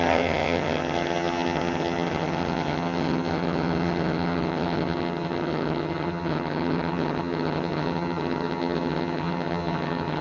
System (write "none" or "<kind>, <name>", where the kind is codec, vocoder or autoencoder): vocoder, HiFi-GAN